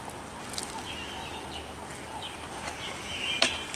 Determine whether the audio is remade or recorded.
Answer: recorded